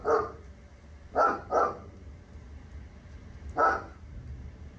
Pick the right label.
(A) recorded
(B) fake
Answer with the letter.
A